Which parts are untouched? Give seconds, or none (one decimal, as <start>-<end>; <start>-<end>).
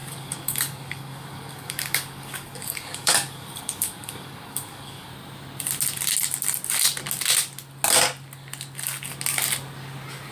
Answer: 5.1-10.3